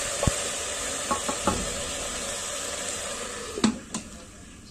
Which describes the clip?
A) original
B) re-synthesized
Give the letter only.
A